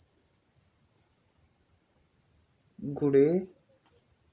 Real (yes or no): yes